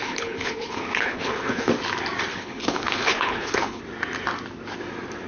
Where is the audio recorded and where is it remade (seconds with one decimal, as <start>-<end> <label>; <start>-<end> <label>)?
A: 0.0-1.7 remade; 1.7-2.3 recorded; 2.3-3.8 remade; 3.8-5.3 recorded